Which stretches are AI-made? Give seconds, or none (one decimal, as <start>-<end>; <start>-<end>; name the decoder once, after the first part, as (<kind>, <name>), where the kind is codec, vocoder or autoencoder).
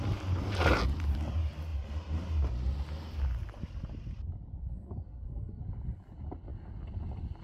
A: 4.5-5.6 (codec, SNAC)